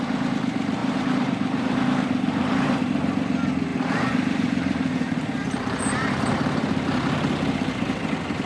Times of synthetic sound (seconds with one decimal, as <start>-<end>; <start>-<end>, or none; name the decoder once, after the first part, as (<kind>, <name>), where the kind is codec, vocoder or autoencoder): 0.8-2.8 (vocoder, BigVGAN v2); 3.7-6.7